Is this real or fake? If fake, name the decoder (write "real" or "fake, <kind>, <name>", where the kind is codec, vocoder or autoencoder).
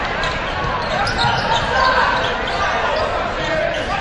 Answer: real